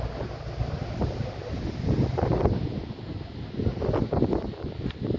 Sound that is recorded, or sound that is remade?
recorded